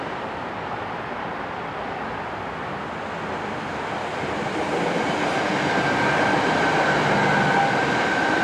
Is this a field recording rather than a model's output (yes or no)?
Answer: yes